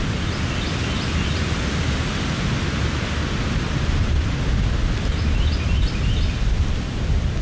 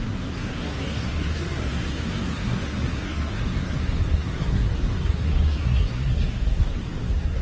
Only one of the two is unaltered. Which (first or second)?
first